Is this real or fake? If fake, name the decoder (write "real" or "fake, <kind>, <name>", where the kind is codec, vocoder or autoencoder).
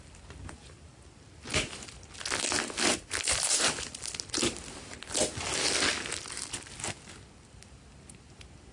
real